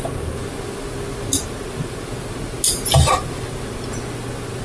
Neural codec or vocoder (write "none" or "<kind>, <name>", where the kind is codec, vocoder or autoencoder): none